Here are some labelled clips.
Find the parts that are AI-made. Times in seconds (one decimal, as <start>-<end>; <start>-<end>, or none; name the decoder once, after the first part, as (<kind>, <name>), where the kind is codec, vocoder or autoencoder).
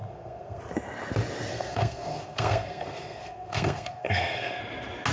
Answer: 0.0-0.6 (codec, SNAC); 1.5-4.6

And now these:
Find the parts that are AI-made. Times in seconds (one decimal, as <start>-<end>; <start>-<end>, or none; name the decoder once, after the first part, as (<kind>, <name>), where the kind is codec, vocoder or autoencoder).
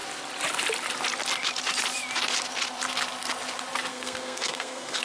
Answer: 3.9-5.0 (codec, SNAC)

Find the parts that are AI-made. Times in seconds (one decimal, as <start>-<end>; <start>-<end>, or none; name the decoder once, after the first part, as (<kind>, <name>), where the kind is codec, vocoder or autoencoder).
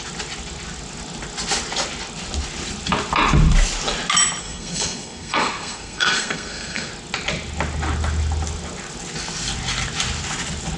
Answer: 4.4-6.9 (codec, SNAC)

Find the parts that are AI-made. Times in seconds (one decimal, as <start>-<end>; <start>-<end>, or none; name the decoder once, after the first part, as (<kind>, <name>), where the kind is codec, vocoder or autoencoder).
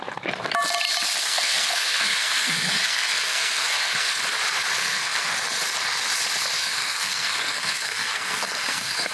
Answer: 1.2-4.2 (codec, SNAC); 4.8-5.3; 6.6-9.1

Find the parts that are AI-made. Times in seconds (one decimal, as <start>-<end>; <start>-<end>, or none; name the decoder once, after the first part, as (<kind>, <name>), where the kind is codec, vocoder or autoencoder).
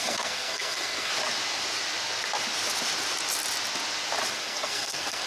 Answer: 0.0-1.1 (codec, SNAC); 4.3-5.3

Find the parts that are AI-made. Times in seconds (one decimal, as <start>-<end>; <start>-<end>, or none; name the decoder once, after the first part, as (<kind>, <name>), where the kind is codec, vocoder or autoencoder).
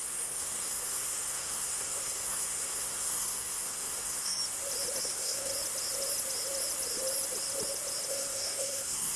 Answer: 0.0-4.4 (codec, SNAC); 5.0-5.5; 8.1-9.2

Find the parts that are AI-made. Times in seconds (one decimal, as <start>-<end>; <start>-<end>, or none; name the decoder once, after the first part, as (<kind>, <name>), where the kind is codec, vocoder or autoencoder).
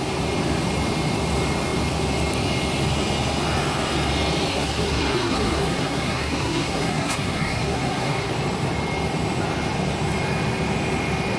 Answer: 4.5-8.3 (codec, SNAC)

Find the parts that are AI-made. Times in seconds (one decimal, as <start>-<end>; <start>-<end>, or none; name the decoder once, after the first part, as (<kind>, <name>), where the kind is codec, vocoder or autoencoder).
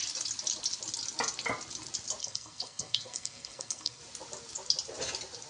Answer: 2.2-4.0 (codec, SNAC)